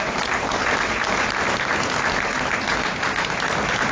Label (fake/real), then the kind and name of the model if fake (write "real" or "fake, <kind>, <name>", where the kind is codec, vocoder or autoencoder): real